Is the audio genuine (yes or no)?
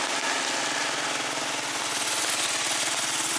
yes